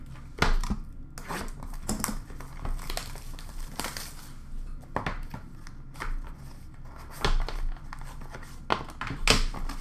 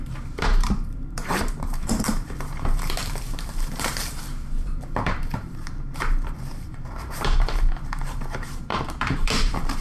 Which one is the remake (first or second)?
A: second